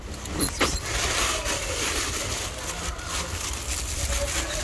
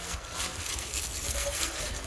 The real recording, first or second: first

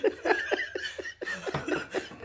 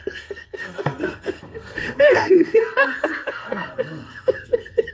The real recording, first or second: first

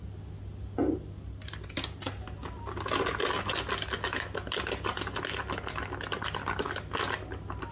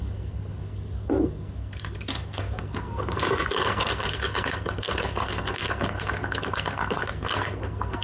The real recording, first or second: first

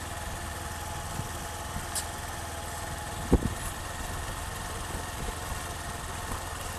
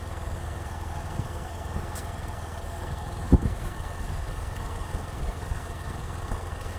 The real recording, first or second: first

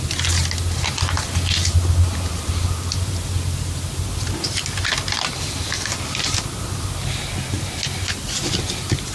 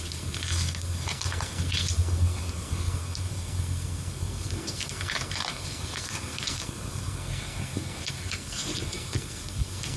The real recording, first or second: first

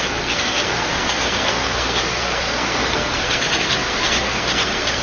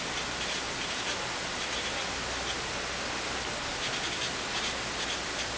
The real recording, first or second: second